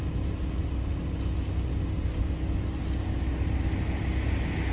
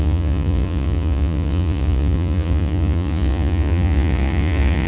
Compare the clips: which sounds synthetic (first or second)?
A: second